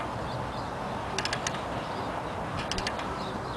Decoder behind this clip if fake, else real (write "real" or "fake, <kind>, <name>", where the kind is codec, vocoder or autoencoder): real